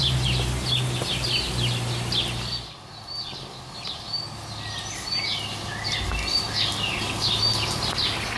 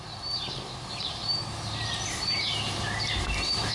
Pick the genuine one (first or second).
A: first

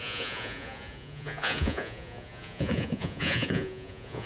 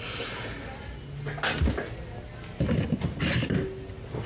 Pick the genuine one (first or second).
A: second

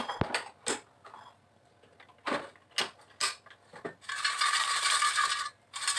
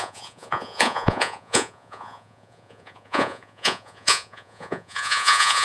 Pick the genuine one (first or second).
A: first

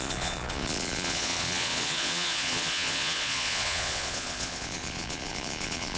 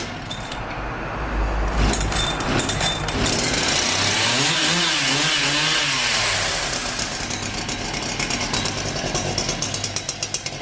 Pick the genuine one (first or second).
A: second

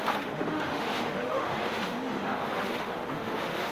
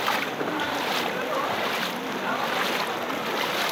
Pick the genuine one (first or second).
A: second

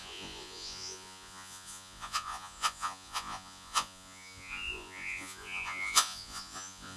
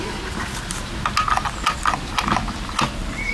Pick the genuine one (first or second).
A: second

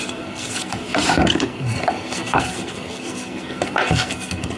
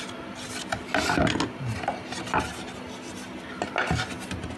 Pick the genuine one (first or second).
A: second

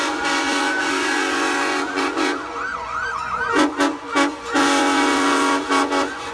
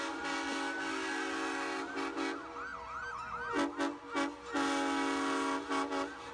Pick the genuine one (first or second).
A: second